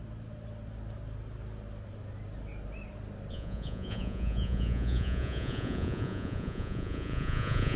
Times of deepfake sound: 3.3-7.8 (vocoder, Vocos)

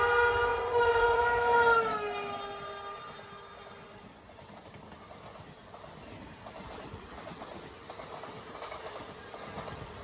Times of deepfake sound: 0.5-1.2 (vocoder, Vocos)

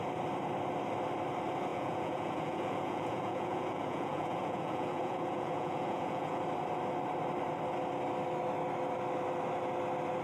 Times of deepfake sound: 1.7-6.4 (vocoder, Vocos)

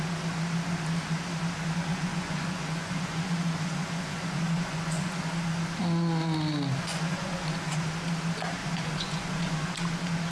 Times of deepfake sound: 1.9-5.3 (vocoder, Vocos); 6.9-7.9; 8.6-9.7

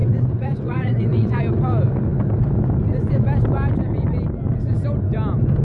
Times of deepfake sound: 0.0-1.4 (vocoder, Vocos)

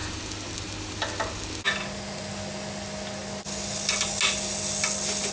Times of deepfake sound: none

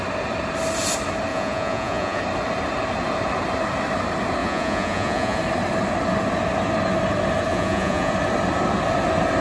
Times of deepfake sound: 1.3-2.2 (vocoder, Vocos); 4.4-5.4; 7.5-8.1